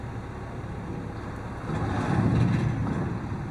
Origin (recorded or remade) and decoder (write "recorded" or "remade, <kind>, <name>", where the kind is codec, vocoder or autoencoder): recorded